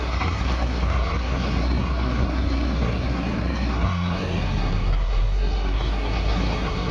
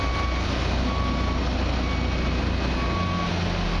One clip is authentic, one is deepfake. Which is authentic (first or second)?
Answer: second